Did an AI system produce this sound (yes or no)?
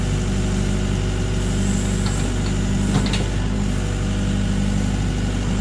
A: no